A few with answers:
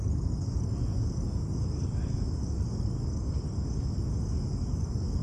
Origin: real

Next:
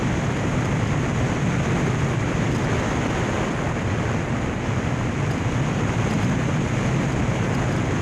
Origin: real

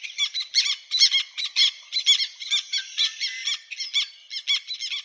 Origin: real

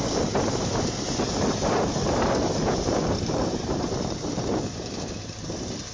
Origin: fake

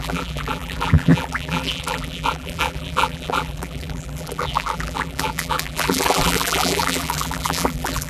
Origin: fake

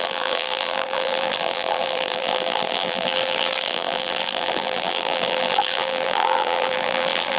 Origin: fake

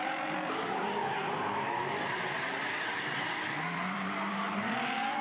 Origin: fake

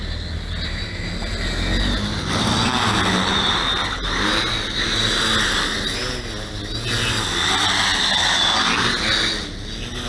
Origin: real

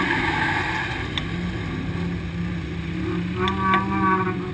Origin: real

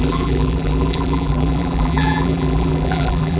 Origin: fake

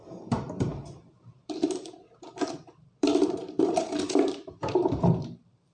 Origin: fake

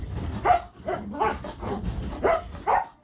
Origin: real